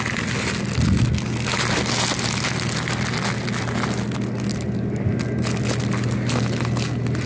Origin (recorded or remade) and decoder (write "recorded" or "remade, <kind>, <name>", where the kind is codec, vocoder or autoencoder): recorded